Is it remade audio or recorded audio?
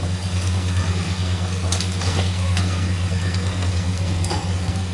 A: remade